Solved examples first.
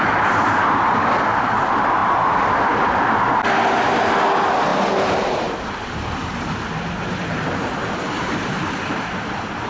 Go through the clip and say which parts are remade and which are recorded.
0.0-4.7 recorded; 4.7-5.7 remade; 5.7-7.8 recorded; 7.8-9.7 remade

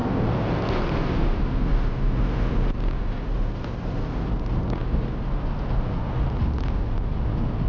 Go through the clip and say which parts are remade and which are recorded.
0.0-7.7 recorded

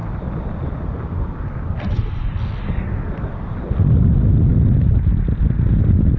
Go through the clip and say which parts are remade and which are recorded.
0.0-6.2 recorded

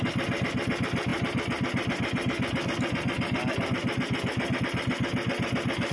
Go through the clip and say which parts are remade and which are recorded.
0.0-5.9 recorded

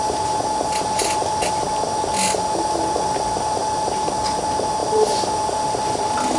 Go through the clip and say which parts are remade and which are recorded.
0.0-6.4 recorded

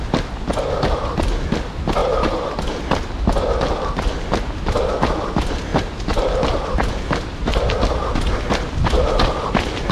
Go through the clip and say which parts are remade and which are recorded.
0.0-2.0 recorded; 2.0-2.6 remade; 2.6-9.9 recorded

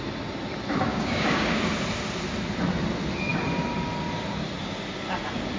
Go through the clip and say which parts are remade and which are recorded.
0.0-0.9 recorded; 0.9-1.6 remade; 1.6-5.6 recorded

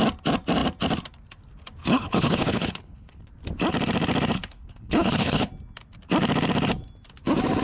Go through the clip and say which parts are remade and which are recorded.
0.0-1.8 recorded; 1.8-3.3 remade; 3.3-4.4 recorded; 4.4-5.5 remade; 5.5-7.6 recorded